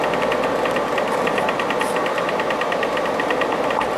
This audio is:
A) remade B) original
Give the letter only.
B